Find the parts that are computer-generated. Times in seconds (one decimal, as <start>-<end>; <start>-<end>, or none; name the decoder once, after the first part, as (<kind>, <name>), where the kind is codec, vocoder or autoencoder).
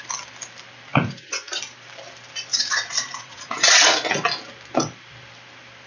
0.9-1.6 (vocoder, Vocos); 2.5-4.1